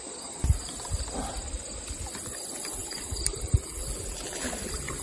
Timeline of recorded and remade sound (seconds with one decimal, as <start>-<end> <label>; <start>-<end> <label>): 0.0-2.8 recorded; 2.8-4.5 remade; 4.5-5.0 recorded

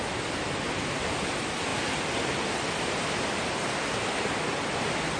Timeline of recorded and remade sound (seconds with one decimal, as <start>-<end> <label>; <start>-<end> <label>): 0.0-5.2 recorded

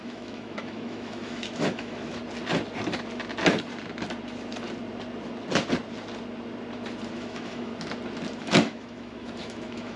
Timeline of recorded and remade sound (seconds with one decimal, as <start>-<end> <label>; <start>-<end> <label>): 0.0-2.2 remade; 2.2-7.1 recorded; 7.1-7.7 remade; 7.7-8.4 recorded; 8.4-10.0 remade